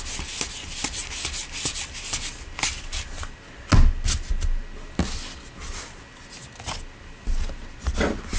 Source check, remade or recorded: recorded